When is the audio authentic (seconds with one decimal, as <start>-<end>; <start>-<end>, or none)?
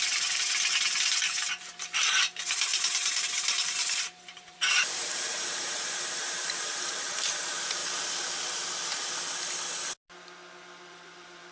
7.8-10.9